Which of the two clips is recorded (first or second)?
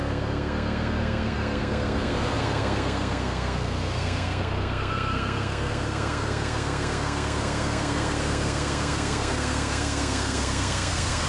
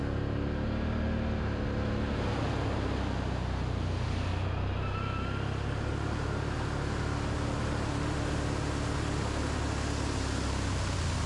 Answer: second